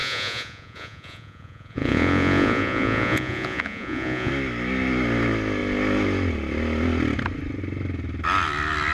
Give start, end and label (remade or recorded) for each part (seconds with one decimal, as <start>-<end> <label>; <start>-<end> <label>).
0.0-4.3 remade; 4.3-8.9 recorded